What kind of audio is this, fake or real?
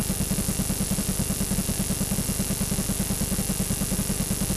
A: real